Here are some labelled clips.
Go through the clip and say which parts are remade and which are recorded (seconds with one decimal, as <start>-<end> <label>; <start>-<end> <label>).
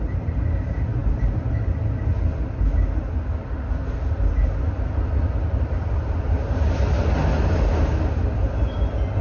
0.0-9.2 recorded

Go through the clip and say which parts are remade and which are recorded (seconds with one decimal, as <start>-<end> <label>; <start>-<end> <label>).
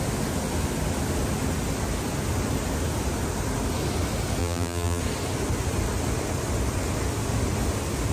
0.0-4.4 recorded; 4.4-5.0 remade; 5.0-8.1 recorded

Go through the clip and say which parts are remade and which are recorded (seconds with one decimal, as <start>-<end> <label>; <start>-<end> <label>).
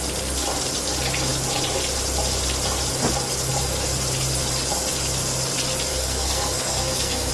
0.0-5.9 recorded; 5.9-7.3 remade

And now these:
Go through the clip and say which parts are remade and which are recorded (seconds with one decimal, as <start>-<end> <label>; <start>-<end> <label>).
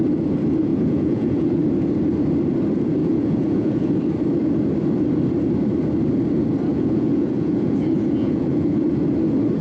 0.0-0.7 recorded; 0.7-1.6 remade; 1.6-3.0 recorded; 3.0-3.9 remade; 3.9-6.7 recorded; 6.7-8.8 remade; 8.8-9.6 recorded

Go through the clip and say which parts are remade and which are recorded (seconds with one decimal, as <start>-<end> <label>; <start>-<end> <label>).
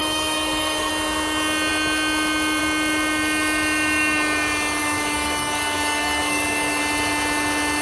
0.0-0.9 remade; 0.9-4.8 recorded; 4.8-6.8 remade; 6.8-7.8 recorded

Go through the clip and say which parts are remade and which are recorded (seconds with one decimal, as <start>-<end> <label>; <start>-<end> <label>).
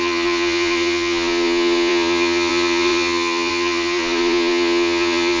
0.0-5.4 remade